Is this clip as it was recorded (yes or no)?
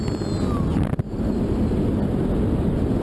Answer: yes